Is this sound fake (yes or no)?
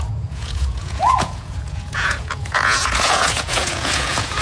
yes